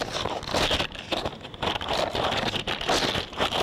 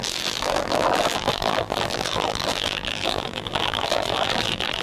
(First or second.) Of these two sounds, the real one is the first